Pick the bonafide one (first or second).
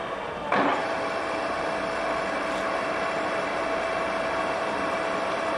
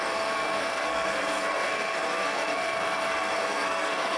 first